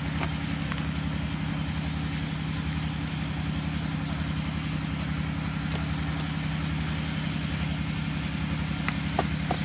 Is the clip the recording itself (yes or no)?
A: yes